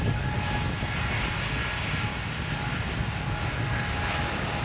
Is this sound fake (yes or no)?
no